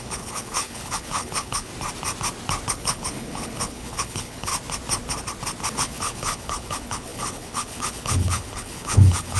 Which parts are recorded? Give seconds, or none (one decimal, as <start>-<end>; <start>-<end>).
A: 1.7-2.7; 4.5-5.7